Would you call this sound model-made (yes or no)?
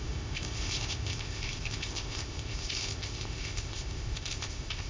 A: yes